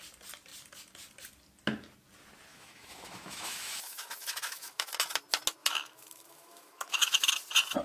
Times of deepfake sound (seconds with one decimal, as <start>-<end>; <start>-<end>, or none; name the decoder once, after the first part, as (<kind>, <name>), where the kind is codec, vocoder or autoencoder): 2.5-4.9 (autoencoder, DAC-VAE); 5.6-7.3